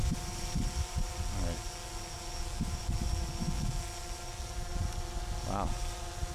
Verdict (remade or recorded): recorded